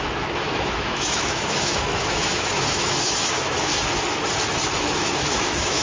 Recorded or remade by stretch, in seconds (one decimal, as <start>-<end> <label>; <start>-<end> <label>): 0.0-3.7 remade; 3.7-4.8 recorded; 4.8-5.8 remade